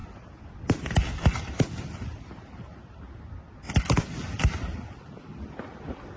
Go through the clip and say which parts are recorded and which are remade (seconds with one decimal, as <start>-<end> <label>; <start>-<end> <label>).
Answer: 0.0-6.2 recorded